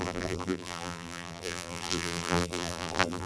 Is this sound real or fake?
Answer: fake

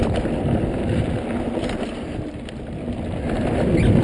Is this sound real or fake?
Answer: real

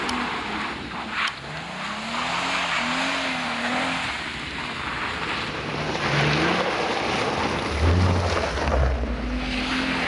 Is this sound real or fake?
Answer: real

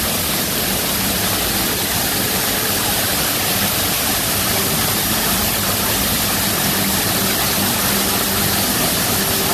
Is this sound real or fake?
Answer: real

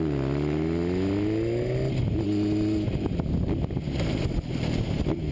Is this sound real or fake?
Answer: real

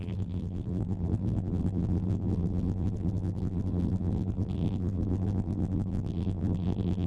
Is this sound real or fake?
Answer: fake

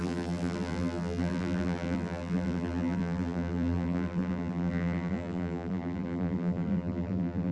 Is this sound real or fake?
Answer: fake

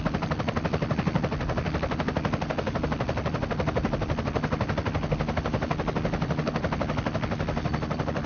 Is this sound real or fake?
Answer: real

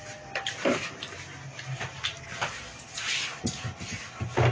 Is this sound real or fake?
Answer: real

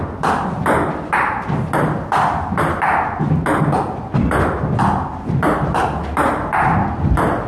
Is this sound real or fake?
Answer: real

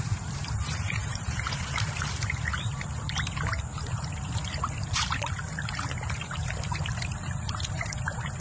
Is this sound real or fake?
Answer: fake